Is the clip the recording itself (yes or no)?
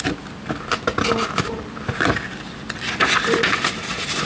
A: yes